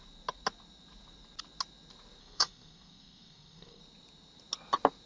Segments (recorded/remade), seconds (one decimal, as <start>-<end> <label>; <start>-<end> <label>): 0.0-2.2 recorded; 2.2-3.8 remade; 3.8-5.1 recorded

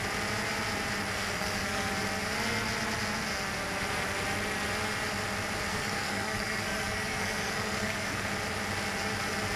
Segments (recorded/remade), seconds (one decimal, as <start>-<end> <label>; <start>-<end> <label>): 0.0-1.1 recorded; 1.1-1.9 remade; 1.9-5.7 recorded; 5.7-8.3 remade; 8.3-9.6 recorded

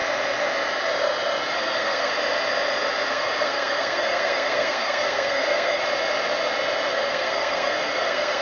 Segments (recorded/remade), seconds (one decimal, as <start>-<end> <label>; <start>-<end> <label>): 0.0-1.5 recorded; 1.5-2.1 remade; 2.1-3.1 recorded; 3.1-5.8 remade; 5.8-6.9 recorded; 6.9-8.4 remade

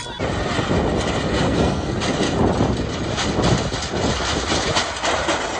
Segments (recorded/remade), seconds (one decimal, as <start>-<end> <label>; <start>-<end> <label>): 0.0-1.3 recorded; 1.3-1.9 remade; 1.9-5.6 recorded

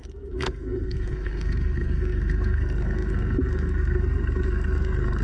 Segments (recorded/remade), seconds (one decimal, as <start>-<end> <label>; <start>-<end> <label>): 0.0-5.2 remade

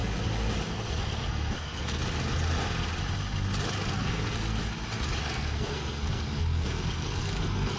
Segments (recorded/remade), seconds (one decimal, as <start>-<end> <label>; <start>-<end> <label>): 0.0-0.7 recorded; 0.7-2.0 remade; 2.0-3.9 recorded; 3.9-4.6 remade; 4.6-5.2 recorded; 5.2-7.8 remade

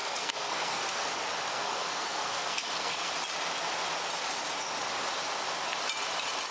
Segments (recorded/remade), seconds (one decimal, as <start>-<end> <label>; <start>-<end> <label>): 0.0-1.1 remade; 1.1-1.5 recorded; 1.5-3.1 remade; 3.1-6.5 recorded

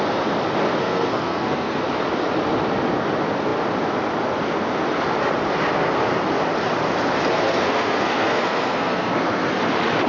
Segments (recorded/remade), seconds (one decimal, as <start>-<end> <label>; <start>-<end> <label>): 0.0-0.8 recorded; 0.8-1.8 remade; 1.8-7.3 recorded; 7.3-9.6 remade; 9.6-10.1 recorded